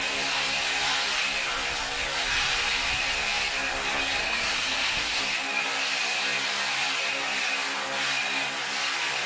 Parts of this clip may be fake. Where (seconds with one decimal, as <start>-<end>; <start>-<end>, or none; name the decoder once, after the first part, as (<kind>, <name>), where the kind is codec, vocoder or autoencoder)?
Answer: 4.2-5.2 (codec, SNAC)